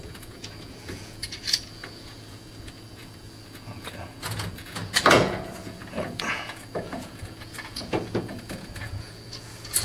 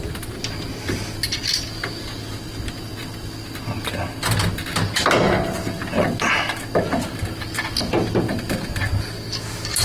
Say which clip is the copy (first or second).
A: first